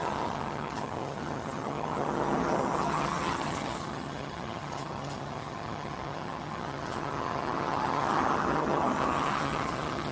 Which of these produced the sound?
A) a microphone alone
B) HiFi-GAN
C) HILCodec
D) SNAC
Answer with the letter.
B